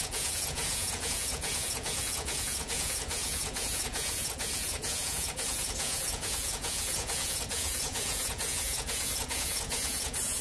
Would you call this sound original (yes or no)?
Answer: no